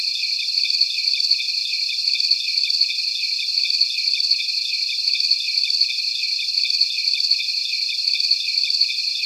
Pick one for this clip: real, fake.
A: real